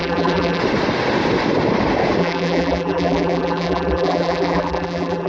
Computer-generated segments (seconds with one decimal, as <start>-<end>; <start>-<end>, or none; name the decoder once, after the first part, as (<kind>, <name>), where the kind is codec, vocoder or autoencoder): 0.0-0.6 (vocoder, BigVGAN v2); 2.2-5.3